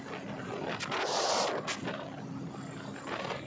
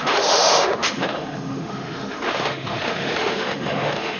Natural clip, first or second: first